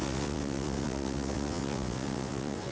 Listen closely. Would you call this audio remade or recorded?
remade